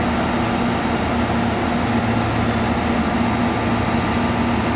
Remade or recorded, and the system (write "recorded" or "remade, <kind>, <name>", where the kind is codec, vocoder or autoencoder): recorded